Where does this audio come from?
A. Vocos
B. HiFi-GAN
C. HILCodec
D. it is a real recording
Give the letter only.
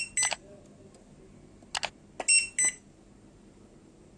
D